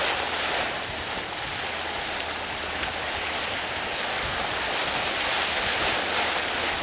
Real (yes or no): yes